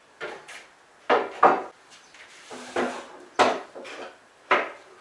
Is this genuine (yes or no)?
yes